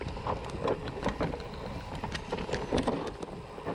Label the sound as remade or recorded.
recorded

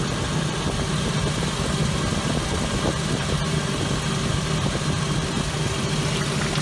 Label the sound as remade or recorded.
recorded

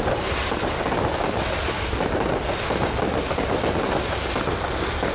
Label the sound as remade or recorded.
recorded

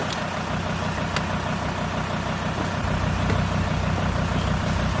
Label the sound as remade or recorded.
recorded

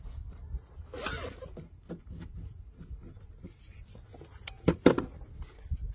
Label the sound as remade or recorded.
recorded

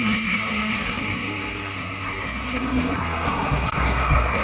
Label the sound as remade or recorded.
remade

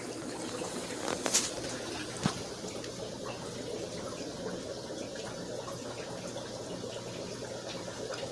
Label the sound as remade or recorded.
recorded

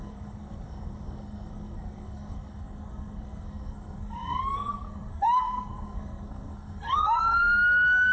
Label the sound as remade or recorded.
remade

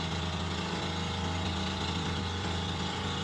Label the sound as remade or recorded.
recorded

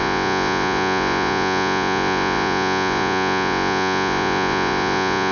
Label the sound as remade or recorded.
remade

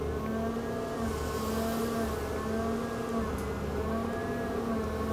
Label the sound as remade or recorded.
recorded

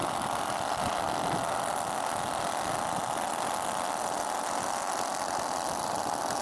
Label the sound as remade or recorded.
recorded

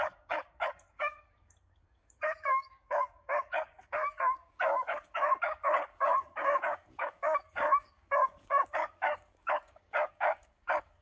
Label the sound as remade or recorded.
remade